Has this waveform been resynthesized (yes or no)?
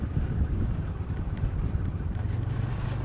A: no